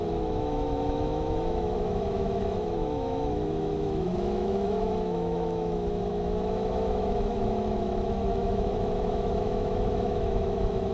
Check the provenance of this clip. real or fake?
fake